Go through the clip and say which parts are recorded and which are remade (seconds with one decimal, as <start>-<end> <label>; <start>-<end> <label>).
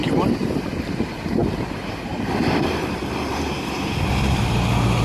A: 0.0-5.0 recorded